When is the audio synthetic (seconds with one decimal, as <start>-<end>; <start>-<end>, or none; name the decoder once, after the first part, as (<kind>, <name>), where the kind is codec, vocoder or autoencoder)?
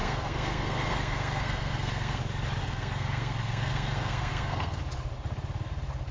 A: 0.0-2.2 (codec, SNAC); 2.6-4.8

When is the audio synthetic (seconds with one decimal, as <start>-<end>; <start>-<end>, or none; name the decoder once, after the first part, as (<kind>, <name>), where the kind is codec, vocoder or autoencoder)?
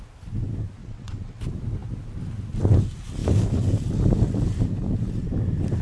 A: 0.8-1.4 (vocoder, WaveNeXt)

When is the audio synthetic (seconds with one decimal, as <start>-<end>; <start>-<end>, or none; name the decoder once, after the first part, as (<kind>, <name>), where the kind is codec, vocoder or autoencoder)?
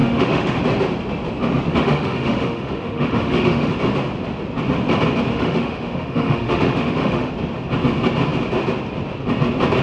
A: 0.0-0.6 (autoencoder, DAC-VAE); 1.7-3.7; 5.3-7.3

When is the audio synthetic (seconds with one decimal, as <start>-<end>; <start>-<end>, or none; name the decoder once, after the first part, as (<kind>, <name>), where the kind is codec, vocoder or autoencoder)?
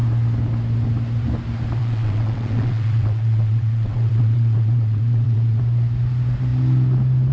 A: 1.8-5.6 (vocoder, WaveNeXt)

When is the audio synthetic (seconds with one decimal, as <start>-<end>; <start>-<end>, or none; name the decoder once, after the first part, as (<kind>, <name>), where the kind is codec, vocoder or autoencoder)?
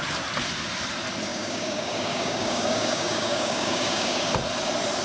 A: 1.3-4.3 (codec, DAC)